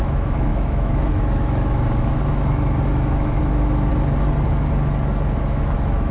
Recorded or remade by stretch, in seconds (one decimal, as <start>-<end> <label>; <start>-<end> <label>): 0.0-3.9 remade; 3.9-5.4 recorded; 5.4-6.1 remade